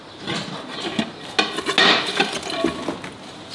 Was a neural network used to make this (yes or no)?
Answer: no